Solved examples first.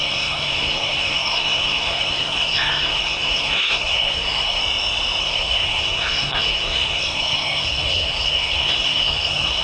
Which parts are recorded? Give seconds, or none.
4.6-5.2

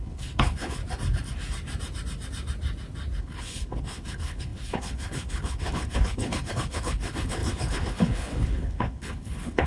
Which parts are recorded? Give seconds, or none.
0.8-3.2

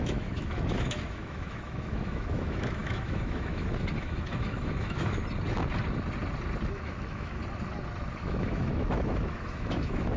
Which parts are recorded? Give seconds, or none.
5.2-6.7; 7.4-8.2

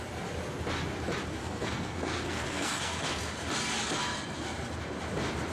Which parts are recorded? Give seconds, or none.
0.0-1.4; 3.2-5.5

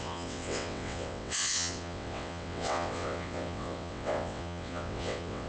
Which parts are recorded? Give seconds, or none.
none

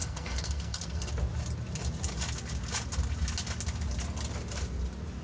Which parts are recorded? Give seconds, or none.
1.1-5.2

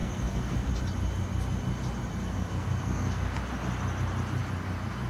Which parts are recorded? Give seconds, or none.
0.7-2.2; 3.4-5.1